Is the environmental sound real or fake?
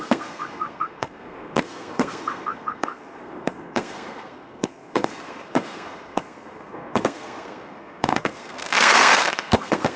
fake